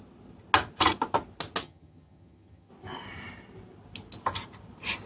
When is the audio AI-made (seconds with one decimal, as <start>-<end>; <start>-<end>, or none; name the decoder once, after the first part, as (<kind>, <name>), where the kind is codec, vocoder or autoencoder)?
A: 1.6-2.7 (vocoder, HiFi-GAN)